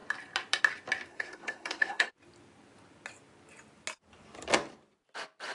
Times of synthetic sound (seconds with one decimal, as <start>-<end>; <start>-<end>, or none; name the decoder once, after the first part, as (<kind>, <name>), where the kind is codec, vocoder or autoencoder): 1.1-2.1 (codec, SNAC)